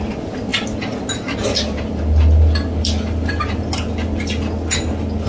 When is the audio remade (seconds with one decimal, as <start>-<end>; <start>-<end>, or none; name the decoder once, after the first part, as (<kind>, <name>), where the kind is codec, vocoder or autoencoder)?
none